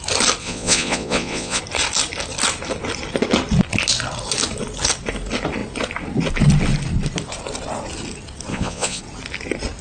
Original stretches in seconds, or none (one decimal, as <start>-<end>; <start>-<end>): 0.0-0.4; 1.6-8.5; 9.0-9.8